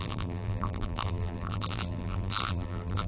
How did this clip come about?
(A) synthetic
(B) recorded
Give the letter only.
A